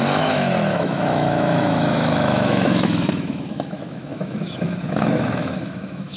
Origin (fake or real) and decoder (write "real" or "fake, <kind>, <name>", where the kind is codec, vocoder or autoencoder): fake, autoencoder, DAC-VAE